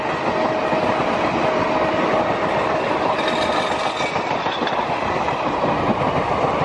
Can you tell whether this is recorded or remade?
recorded